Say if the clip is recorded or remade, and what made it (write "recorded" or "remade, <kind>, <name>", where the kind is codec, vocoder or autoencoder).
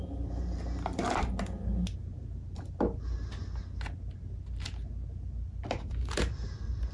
recorded